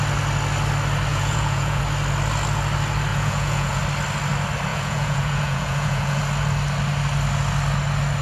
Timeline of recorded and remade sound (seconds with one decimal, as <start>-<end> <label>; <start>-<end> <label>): 0.0-1.1 recorded; 1.1-1.8 remade; 1.8-3.1 recorded; 3.1-3.8 remade; 3.8-4.7 recorded; 4.7-6.2 remade; 6.2-8.2 recorded